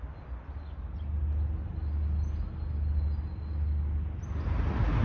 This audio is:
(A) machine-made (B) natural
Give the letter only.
B